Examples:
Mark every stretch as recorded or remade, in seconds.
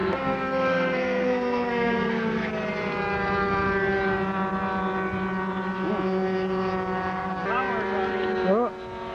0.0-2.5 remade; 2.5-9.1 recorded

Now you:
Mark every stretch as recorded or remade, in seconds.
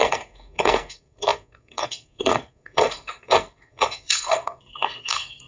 0.0-5.5 remade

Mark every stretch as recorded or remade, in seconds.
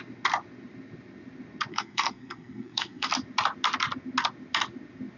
0.0-1.7 recorded; 1.7-3.1 remade; 3.1-5.2 recorded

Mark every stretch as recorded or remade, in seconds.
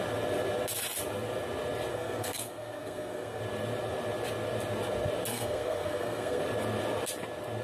0.0-1.9 recorded; 1.9-3.4 remade; 3.4-5.3 recorded; 5.3-6.4 remade; 6.4-7.6 recorded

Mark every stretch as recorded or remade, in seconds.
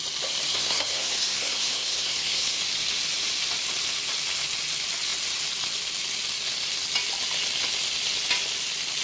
0.0-0.5 recorded; 0.5-2.6 remade; 2.6-9.0 recorded